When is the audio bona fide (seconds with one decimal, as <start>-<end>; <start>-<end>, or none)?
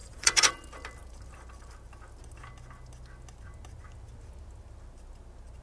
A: 0.5-5.6